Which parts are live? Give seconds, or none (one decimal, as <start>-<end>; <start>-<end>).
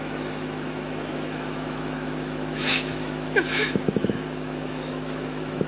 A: none